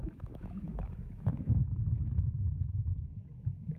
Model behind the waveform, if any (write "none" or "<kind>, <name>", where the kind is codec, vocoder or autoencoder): autoencoder, DAC-VAE